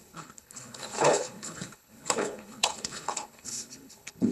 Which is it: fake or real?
fake